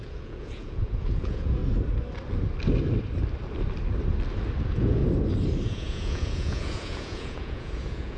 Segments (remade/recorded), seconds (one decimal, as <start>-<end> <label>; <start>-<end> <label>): 0.0-1.6 remade; 1.6-4.6 recorded; 4.6-5.0 remade; 5.0-5.7 recorded; 5.7-8.2 remade